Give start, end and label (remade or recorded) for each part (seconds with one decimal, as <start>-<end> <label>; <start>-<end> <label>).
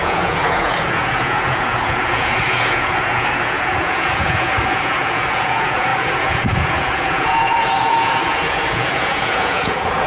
0.0-10.1 remade